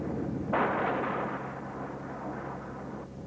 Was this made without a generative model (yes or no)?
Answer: yes